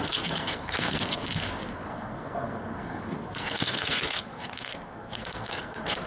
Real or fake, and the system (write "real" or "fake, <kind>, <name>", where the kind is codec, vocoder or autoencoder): fake, codec, SNAC